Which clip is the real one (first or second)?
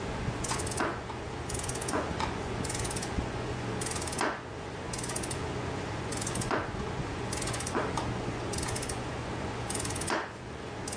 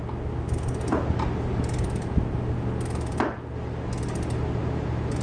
second